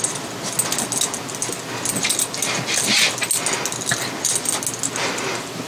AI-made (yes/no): no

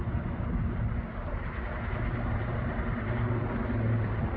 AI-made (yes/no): yes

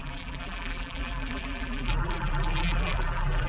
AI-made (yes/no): yes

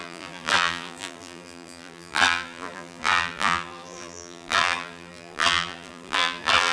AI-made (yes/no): yes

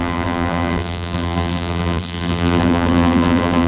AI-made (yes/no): yes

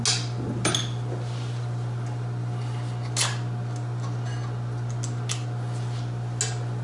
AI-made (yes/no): no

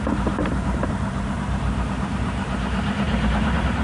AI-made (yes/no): yes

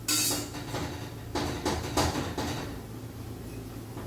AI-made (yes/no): no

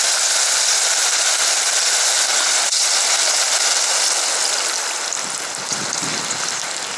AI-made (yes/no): no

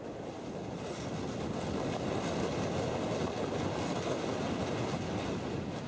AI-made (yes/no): no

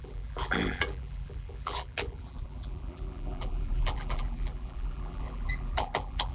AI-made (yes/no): yes